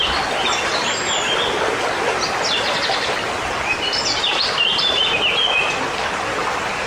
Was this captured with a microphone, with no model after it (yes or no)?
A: yes